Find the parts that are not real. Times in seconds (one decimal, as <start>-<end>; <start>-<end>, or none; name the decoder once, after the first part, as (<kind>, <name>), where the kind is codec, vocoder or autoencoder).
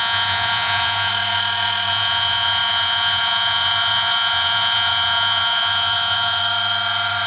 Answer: 0.0-1.1 (vocoder, Vocos); 1.9-6.4